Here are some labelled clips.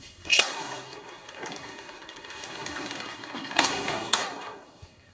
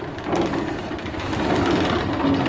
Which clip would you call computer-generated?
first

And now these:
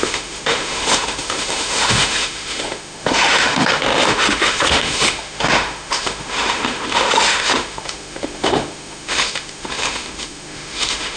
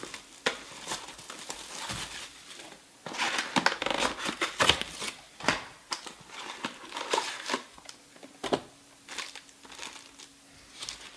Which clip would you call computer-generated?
first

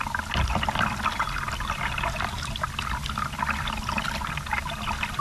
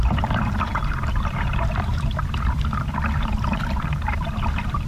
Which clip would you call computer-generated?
second